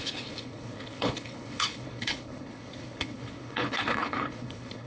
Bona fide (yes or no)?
no